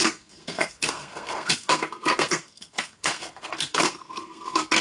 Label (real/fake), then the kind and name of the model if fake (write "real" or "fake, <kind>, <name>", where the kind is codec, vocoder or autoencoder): fake, codec, SNAC